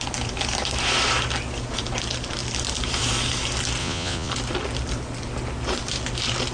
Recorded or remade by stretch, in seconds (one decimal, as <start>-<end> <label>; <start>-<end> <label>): 0.0-3.8 recorded; 3.8-4.3 remade; 4.3-6.5 recorded